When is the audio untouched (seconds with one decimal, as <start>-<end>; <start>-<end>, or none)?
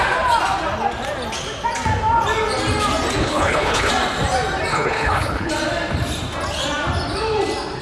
0.0-3.2; 3.9-4.7; 5.5-7.8